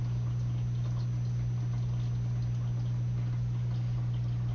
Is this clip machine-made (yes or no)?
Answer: no